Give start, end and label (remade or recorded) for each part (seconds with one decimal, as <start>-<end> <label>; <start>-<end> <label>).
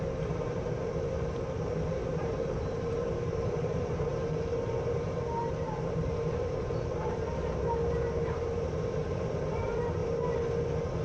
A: 0.0-10.0 remade; 10.0-11.0 recorded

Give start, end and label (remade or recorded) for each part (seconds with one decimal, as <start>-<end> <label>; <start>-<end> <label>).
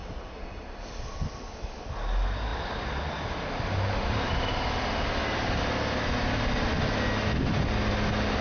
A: 0.0-2.5 recorded; 2.5-3.0 remade; 3.0-8.4 recorded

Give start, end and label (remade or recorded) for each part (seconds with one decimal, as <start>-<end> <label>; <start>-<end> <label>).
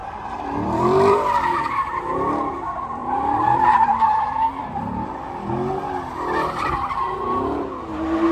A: 0.0-1.6 remade; 1.6-3.0 recorded; 3.0-5.5 remade; 5.5-8.3 recorded